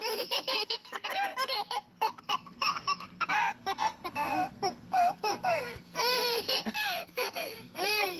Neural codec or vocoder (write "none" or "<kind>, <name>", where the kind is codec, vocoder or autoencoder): codec, SNAC